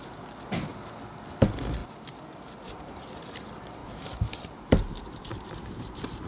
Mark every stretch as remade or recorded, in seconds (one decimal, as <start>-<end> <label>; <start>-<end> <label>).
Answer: 0.0-1.8 recorded; 1.8-2.7 remade; 2.7-3.8 recorded; 3.8-6.3 remade